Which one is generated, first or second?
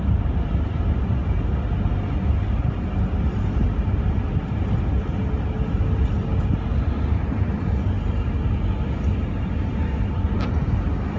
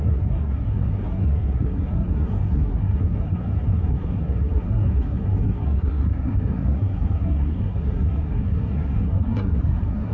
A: second